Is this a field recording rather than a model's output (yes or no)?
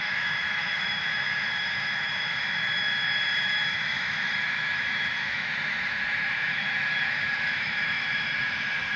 no